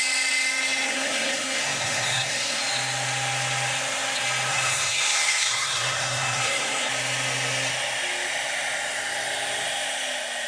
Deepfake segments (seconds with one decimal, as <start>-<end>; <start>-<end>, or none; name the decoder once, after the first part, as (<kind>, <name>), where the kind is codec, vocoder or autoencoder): 0.9-2.6 (codec, SNAC); 4.5-6.9